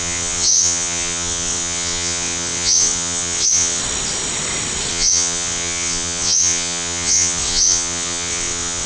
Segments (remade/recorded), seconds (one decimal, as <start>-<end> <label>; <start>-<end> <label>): 0.0-3.8 remade; 3.8-4.9 recorded; 4.9-8.9 remade